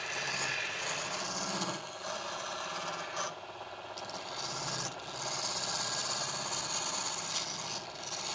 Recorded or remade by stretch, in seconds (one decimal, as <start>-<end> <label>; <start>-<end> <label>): 0.0-8.3 recorded